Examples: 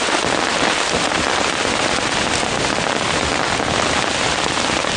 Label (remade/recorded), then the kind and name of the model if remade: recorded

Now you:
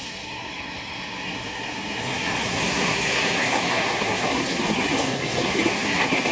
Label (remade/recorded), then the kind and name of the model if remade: remade, codec, SNAC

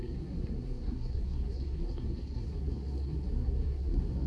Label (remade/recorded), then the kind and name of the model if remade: remade, codec, SNAC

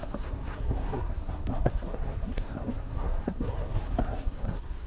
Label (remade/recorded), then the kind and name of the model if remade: remade, codec, SNAC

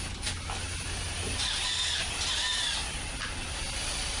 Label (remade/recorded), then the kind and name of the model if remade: recorded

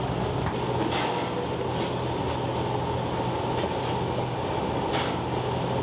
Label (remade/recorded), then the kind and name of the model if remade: recorded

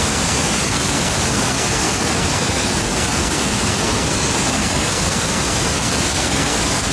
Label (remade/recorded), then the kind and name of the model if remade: remade, codec, SNAC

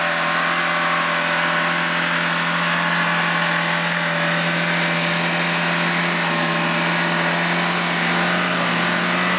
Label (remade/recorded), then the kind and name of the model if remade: recorded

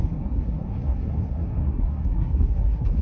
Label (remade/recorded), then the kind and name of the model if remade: remade, codec, SNAC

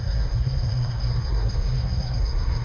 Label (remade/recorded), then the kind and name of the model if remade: remade, codec, SNAC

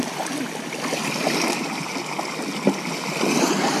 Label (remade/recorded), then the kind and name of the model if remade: recorded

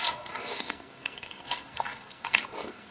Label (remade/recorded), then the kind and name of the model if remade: remade, codec, SNAC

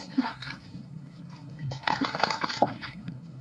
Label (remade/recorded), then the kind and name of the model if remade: remade, codec, SNAC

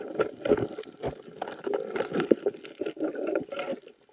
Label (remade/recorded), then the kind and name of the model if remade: recorded